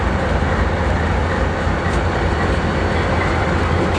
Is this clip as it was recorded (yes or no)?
yes